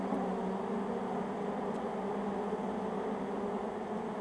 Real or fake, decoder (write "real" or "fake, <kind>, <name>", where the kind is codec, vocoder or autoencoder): real